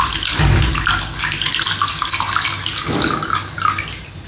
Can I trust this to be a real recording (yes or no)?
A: yes